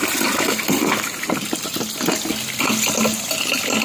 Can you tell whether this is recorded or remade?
recorded